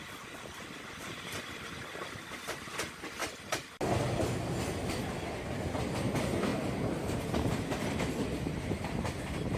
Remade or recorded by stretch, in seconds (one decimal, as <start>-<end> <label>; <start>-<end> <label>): 0.0-9.6 recorded